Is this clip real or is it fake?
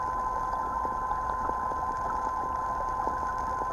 real